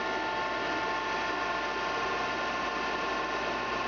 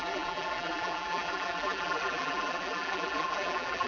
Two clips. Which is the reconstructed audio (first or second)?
second